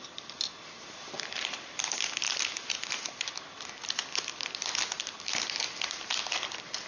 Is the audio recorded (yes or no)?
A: no